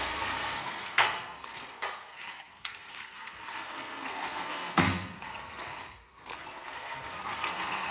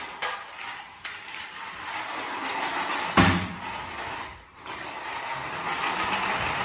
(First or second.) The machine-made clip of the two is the first